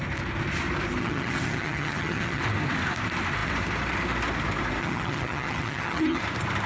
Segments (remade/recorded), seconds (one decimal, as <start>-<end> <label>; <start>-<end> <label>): 0.0-1.0 recorded; 1.0-2.4 remade; 2.4-4.8 recorded; 4.8-6.2 remade; 6.2-6.7 recorded